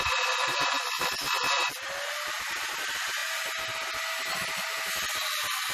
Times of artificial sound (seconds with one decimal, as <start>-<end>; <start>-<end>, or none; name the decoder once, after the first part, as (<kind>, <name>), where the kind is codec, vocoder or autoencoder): none